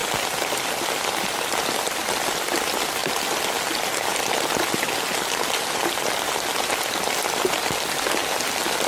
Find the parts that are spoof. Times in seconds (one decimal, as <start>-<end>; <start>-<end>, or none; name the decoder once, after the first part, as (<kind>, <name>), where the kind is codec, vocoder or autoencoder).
none